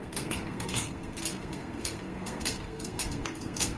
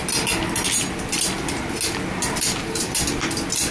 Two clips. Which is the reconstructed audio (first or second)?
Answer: first